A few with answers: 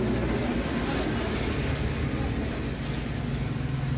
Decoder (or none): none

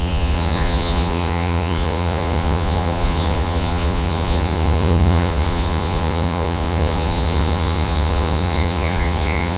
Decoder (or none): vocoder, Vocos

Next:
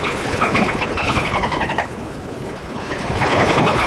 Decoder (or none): codec, HILCodec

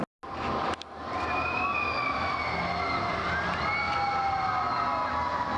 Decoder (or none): none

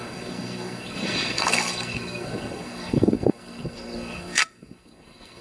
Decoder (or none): codec, SNAC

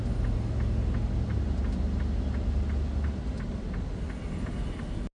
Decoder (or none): none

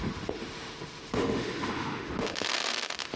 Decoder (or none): autoencoder, DAC-VAE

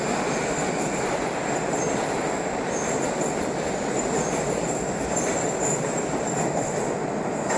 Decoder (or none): none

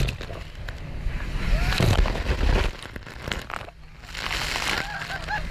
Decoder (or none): none